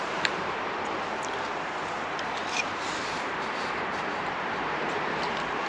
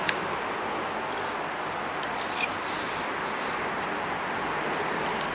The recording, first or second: second